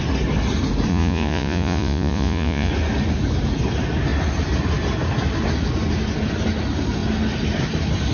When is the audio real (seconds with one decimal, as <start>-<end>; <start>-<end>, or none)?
0.0-0.9; 2.7-8.1